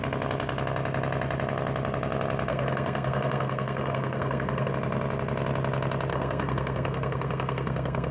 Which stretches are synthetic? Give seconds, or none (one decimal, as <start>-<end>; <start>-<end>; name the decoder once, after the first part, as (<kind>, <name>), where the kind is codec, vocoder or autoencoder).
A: 2.5-4.7 (codec, SNAC); 6.1-8.1